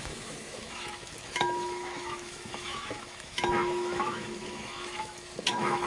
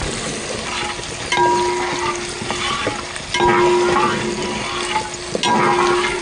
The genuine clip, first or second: second